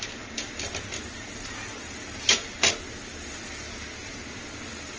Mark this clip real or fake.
real